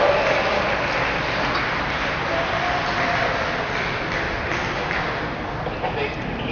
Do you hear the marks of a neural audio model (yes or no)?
no